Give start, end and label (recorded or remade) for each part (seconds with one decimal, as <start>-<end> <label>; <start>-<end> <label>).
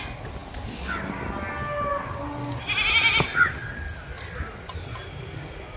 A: 0.0-5.8 recorded